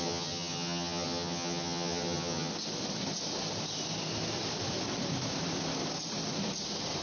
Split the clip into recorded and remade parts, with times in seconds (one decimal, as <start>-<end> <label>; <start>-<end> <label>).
0.0-2.5 remade; 2.5-7.0 recorded